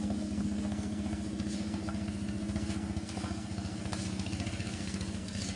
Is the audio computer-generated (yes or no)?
yes